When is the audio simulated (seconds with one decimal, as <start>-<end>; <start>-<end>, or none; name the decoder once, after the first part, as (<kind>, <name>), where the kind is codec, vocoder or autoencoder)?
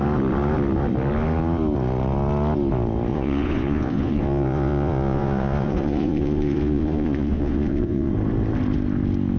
3.1-8.1 (vocoder, Vocos)